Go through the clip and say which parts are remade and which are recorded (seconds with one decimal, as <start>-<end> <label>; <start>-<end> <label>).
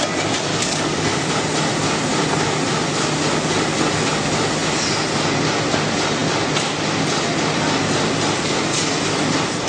0.0-0.5 recorded; 0.5-1.3 remade; 1.3-9.7 recorded